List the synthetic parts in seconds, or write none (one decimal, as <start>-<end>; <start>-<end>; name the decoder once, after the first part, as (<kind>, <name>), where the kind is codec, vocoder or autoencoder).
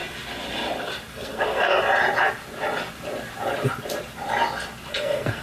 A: 1.1-1.7 (codec, SNAC); 4.9-5.4